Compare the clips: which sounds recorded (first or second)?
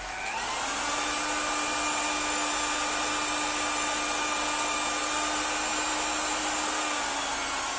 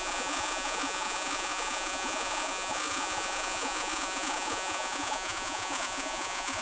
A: first